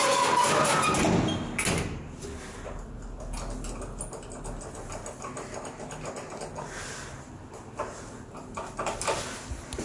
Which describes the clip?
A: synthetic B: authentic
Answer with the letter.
B